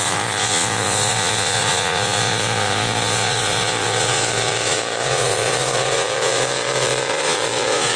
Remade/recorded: remade